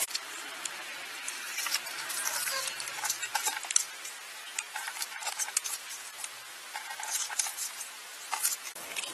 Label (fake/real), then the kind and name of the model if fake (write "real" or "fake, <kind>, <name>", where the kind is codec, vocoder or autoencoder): fake, vocoder, BigVGAN v2